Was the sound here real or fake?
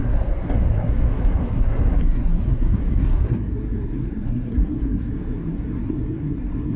fake